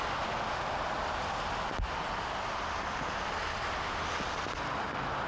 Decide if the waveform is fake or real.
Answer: real